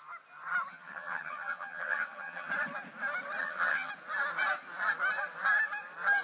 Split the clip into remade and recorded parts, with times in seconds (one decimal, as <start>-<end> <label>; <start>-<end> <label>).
0.0-0.7 recorded; 0.7-2.5 remade; 2.5-3.4 recorded; 3.4-3.9 remade; 3.9-6.2 recorded